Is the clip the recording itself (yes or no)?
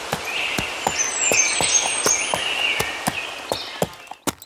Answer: yes